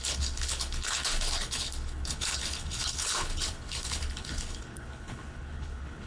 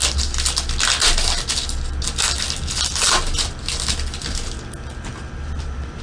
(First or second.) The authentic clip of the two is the second